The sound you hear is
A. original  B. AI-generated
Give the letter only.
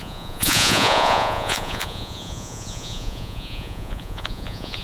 B